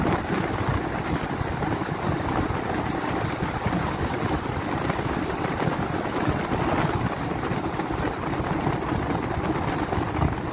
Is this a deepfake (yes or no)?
no